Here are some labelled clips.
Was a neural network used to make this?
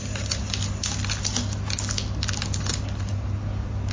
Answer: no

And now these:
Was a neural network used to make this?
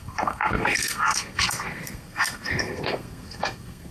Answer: yes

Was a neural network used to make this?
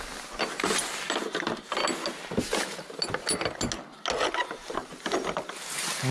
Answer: no